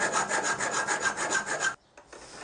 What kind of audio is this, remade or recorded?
recorded